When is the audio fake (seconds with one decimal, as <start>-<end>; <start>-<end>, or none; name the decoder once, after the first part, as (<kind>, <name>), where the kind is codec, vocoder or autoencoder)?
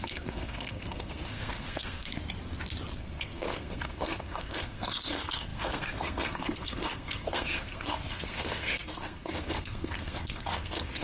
0.0-2.1 (codec, SNAC); 2.9-11.0